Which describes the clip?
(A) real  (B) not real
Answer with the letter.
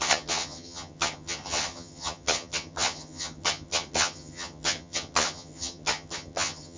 B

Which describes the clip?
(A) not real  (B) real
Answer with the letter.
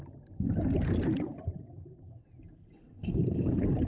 B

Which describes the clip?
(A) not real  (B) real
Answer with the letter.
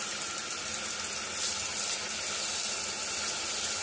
B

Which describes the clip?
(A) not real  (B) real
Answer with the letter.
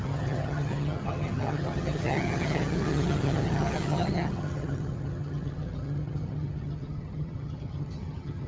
A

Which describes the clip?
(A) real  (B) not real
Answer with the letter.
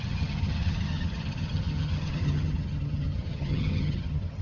B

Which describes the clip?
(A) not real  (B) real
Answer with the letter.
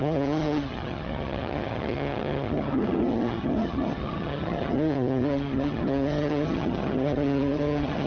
A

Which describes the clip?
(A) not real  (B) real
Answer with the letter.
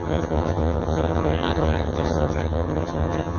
A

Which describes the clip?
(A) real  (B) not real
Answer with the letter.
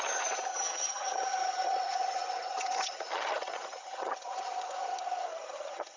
B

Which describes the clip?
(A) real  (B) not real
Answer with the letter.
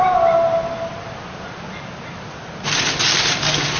A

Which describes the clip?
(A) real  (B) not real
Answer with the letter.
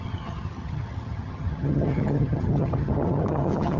B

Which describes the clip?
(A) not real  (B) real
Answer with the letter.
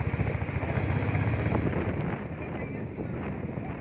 B